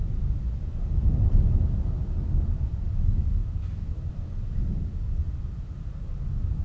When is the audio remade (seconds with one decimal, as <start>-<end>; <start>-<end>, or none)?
none